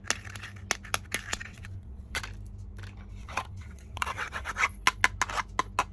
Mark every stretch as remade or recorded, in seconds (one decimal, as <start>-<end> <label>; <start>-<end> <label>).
0.0-1.3 recorded; 1.3-2.2 remade; 2.2-3.2 recorded; 3.2-4.5 remade; 4.5-5.9 recorded